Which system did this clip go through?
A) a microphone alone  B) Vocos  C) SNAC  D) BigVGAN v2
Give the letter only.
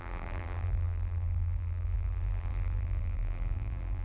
D